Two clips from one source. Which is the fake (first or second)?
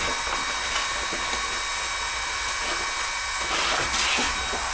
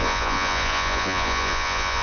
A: second